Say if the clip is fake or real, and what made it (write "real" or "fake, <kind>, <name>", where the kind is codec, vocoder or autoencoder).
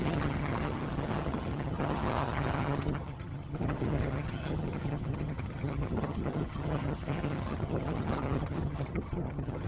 fake, vocoder, HiFi-GAN